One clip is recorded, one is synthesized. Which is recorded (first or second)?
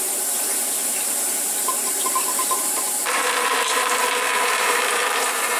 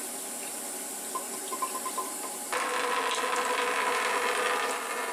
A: second